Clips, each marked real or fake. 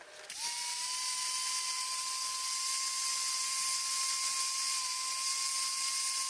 real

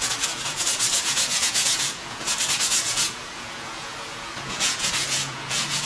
fake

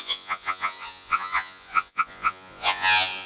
fake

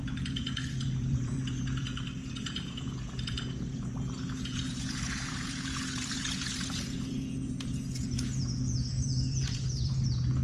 fake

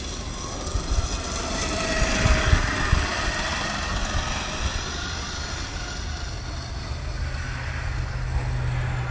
real